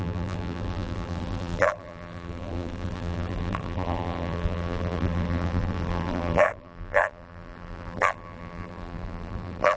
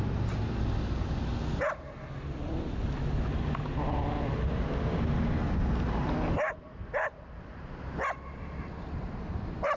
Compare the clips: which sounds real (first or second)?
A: second